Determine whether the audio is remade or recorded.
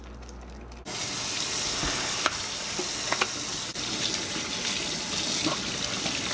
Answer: recorded